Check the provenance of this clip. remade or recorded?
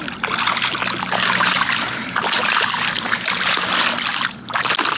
recorded